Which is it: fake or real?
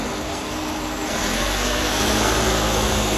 fake